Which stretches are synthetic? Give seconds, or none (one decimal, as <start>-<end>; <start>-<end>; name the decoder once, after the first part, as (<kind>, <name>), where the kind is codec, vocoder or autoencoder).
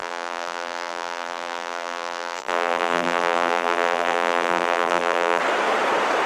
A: 0.0-5.4 (vocoder, BigVGAN v2)